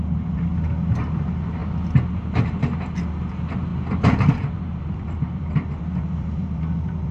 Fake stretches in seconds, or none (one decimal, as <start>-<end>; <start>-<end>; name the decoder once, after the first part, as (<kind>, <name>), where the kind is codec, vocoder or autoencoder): 3.7-7.1 (vocoder, BigVGAN v2)